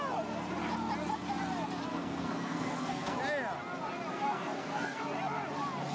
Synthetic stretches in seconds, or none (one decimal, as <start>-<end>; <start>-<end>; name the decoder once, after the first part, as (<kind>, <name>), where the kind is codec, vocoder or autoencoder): 1.9-3.2 (codec, SNAC); 4.1-5.0